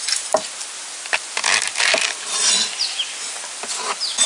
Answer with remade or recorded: recorded